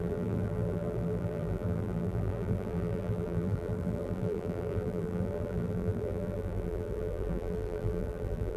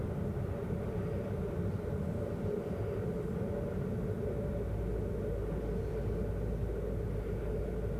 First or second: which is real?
second